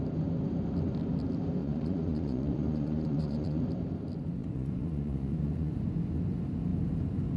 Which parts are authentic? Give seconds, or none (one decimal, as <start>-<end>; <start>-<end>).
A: 0.0-1.6; 3.6-4.4; 5.7-7.4